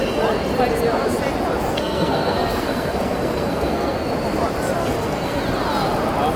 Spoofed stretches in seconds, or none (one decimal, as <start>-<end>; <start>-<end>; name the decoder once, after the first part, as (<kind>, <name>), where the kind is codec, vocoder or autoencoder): 1.7-4.1 (codec, SNAC); 4.8-5.4